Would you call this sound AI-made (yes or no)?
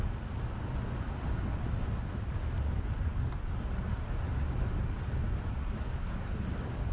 no